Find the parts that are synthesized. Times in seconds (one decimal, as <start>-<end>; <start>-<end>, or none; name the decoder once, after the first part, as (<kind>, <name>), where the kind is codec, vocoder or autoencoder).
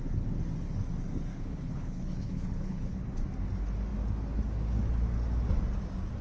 1.3-3.0 (codec, HILCodec)